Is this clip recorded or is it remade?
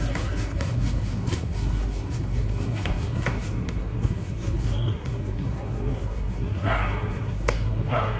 remade